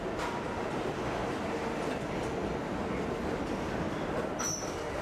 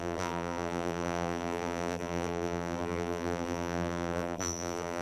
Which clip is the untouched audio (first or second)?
first